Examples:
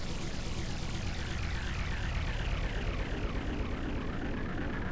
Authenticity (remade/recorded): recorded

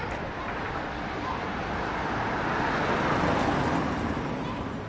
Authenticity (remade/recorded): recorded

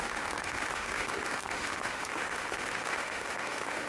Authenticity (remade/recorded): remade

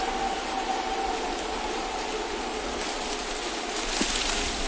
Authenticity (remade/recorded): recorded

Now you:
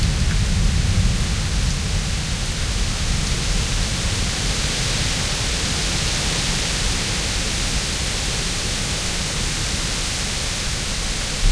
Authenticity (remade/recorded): recorded